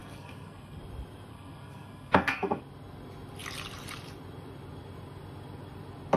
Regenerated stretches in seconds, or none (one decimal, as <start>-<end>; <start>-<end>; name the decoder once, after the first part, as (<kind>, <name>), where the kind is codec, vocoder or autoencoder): 0.0-0.8 (codec, SNAC); 1.3-2.6